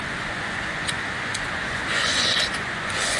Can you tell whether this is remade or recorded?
remade